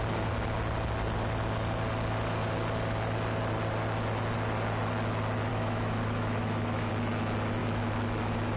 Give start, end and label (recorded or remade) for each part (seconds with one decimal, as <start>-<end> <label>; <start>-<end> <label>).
0.0-5.5 recorded; 5.5-6.9 remade; 6.9-7.6 recorded; 7.6-8.6 remade